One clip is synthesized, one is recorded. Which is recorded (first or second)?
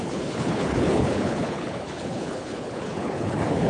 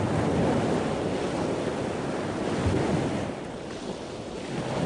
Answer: second